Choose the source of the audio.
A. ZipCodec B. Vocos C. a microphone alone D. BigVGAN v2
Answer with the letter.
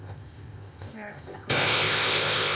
A